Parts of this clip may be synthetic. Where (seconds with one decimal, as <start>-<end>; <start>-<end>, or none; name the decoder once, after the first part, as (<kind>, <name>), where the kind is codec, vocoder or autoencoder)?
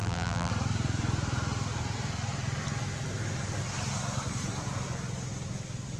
0.0-0.5 (vocoder, BigVGAN v2)